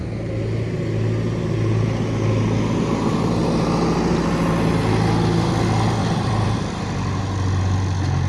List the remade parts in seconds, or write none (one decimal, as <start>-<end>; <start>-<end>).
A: 6.0-6.8